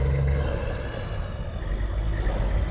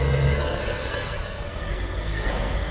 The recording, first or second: first